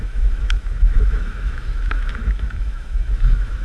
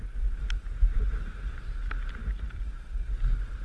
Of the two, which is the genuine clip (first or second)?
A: second